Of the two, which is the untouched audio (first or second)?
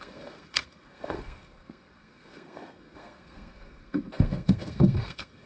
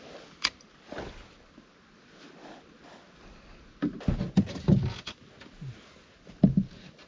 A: second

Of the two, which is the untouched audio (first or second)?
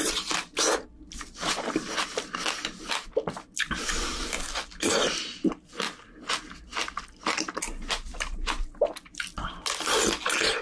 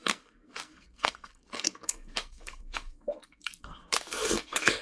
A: first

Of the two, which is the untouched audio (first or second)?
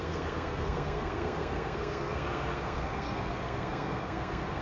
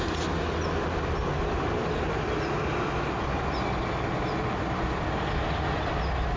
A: second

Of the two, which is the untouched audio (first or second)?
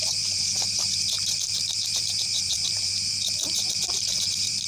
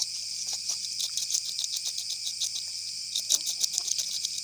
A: second